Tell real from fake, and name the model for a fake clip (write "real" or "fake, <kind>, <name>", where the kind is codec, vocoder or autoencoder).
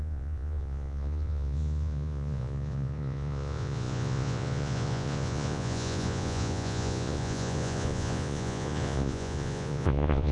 fake, vocoder, Vocos